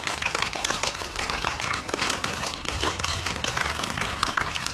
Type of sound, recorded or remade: remade